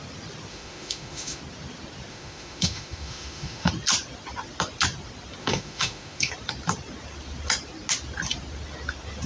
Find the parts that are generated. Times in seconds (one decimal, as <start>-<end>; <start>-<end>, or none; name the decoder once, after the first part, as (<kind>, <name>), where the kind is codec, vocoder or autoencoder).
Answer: 0.5-1.4 (autoencoder, DAC-VAE); 2.1-3.7; 5.4-6.3